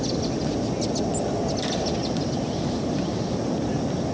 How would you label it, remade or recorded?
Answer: recorded